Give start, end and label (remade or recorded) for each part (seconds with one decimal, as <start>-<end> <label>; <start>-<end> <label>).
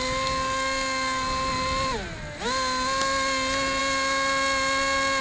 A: 0.0-5.2 recorded